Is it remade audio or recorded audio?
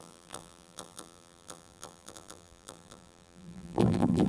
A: remade